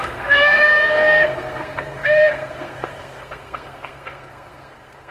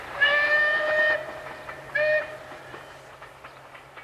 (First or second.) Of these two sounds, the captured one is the second